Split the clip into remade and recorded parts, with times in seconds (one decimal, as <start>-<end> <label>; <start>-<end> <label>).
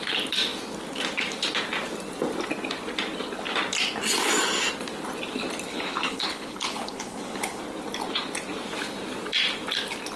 0.0-5.7 recorded; 5.7-7.6 remade; 7.6-10.2 recorded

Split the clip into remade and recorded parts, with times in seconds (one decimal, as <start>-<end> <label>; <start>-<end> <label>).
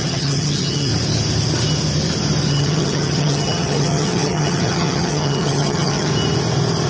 0.0-0.9 remade; 0.9-2.5 recorded; 2.5-6.1 remade; 6.1-6.9 recorded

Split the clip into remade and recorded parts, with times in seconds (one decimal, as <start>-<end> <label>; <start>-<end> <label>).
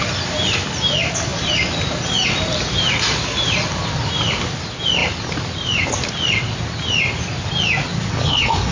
0.0-8.1 recorded; 8.1-8.7 remade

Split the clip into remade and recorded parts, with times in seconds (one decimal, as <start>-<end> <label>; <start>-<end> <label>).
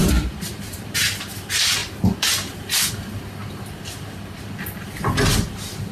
0.0-0.8 remade; 0.8-5.9 recorded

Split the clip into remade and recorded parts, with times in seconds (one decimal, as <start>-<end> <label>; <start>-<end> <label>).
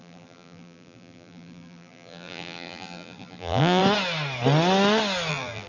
0.0-3.8 remade; 3.8-5.3 recorded; 5.3-5.7 remade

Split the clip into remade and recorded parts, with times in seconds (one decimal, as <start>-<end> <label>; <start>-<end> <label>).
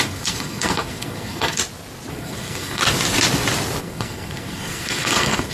0.0-1.6 remade; 1.6-2.1 recorded; 2.1-2.8 remade; 2.8-3.8 recorded; 3.8-5.5 remade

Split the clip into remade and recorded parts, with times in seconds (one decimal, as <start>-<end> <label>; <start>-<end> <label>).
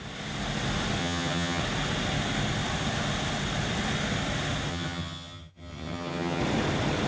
0.0-1.0 recorded; 1.0-1.6 remade; 1.6-4.7 recorded; 4.7-6.4 remade; 6.4-7.1 recorded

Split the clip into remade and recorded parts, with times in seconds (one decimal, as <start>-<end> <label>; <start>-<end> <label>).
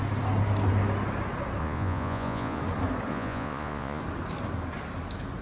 0.0-1.6 recorded; 1.6-2.6 remade; 2.6-3.1 recorded; 3.1-4.0 remade; 4.0-5.4 recorded